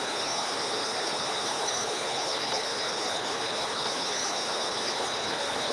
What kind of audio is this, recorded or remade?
remade